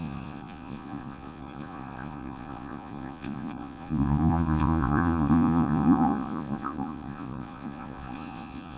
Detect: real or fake fake